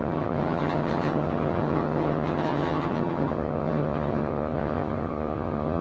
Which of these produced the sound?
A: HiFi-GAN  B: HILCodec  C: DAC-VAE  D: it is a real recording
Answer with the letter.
A